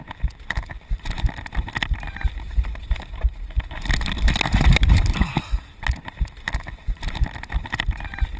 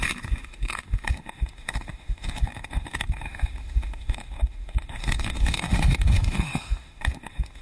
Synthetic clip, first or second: second